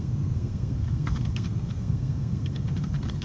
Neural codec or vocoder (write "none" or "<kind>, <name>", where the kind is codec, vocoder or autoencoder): codec, SNAC